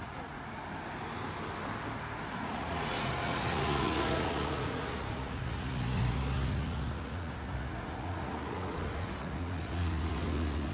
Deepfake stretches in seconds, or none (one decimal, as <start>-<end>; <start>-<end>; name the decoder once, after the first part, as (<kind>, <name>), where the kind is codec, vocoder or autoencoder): 0.0-0.6 (vocoder, Vocos); 2.4-10.7